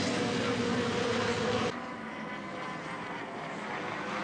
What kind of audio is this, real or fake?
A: real